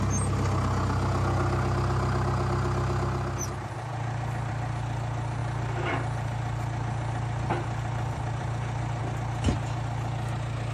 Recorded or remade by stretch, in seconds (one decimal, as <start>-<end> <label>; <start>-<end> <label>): 0.0-5.4 recorded; 5.4-9.0 remade; 9.0-10.7 recorded